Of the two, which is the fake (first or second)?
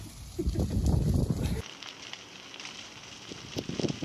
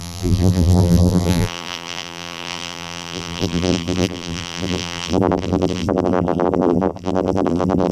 second